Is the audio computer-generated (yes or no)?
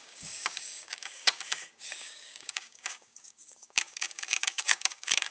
yes